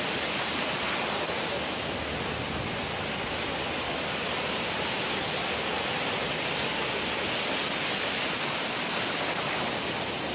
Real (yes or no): yes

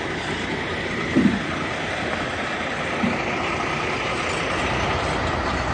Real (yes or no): yes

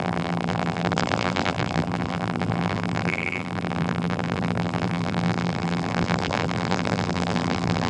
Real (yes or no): no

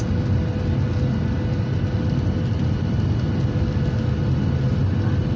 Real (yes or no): yes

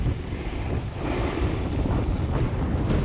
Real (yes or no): yes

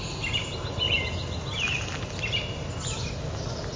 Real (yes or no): yes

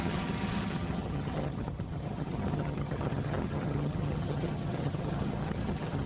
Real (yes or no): no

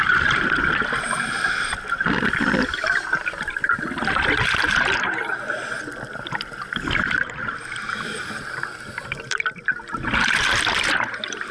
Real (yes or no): no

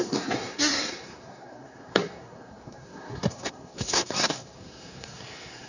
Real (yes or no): no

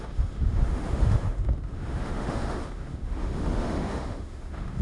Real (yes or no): no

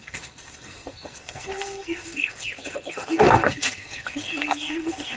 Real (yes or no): no